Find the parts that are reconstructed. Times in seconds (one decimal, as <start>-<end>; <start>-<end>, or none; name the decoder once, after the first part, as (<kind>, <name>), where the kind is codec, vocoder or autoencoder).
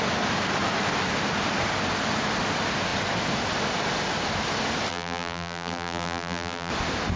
4.9-6.7 (vocoder, BigVGAN v2)